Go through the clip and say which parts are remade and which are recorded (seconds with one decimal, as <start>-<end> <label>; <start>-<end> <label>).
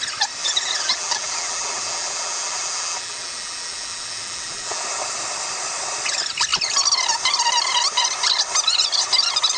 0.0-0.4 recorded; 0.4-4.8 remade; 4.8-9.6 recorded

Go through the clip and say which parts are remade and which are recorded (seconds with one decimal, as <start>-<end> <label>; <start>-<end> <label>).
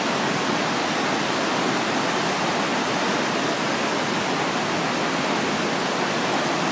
0.0-6.7 recorded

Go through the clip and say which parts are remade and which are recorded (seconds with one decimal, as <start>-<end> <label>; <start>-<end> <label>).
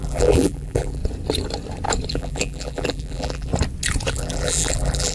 0.0-1.0 remade; 1.0-2.1 recorded; 2.1-3.5 remade; 3.5-4.1 recorded; 4.1-5.1 remade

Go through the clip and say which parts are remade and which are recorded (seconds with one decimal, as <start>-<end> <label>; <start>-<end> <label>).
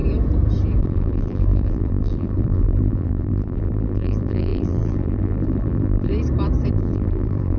0.0-0.8 recorded; 0.8-6.1 remade; 6.1-6.7 recorded; 6.7-7.6 remade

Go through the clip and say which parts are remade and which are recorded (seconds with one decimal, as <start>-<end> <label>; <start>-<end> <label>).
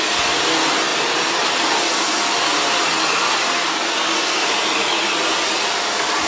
0.0-0.9 recorded; 0.9-1.9 remade; 1.9-6.3 recorded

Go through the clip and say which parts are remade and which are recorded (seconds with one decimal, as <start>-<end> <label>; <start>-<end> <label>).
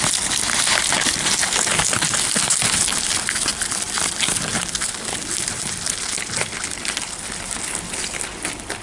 0.0-3.5 recorded; 3.5-7.0 remade; 7.0-8.8 recorded